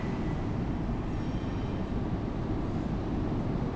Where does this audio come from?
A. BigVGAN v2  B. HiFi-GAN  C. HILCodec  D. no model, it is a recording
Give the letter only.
D